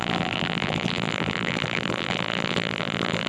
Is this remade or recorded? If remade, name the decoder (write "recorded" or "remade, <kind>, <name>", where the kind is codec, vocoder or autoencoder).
remade, vocoder, BigVGAN v2